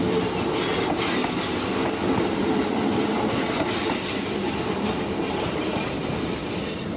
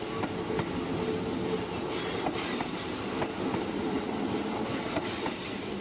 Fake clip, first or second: second